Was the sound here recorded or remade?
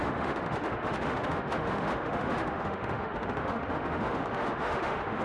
remade